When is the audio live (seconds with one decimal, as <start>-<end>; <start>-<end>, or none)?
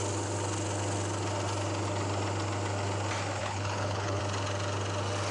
0.0-3.4; 4.2-5.3